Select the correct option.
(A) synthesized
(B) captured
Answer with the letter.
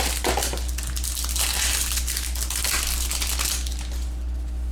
B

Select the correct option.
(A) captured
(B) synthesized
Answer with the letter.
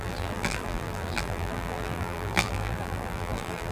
B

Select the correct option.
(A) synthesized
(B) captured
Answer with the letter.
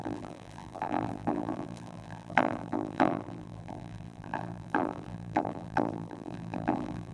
A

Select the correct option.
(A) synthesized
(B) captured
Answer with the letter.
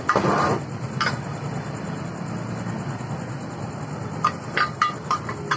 B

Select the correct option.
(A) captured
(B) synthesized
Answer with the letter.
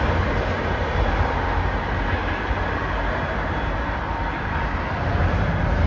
A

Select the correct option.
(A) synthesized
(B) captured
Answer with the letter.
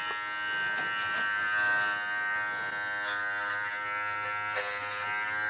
B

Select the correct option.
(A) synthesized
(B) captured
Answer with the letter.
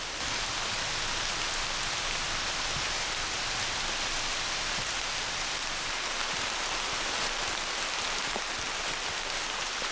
B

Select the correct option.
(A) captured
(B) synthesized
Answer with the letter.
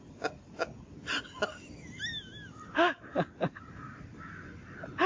A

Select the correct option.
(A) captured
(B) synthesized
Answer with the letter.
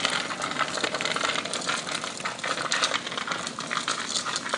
A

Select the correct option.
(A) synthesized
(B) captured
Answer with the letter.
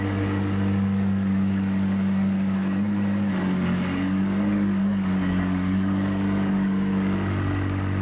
A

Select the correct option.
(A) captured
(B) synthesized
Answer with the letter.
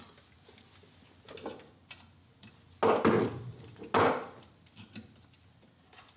A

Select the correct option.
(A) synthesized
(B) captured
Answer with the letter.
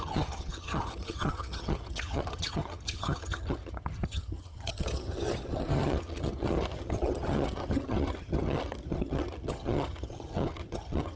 A